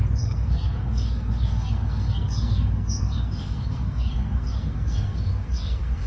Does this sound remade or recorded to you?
remade